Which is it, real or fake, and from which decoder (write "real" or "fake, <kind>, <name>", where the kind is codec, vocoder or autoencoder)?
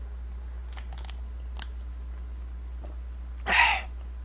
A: real